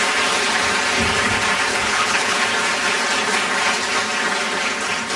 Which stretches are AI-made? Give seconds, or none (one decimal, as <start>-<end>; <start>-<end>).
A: 1.7-2.4